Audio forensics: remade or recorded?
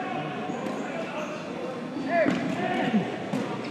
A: recorded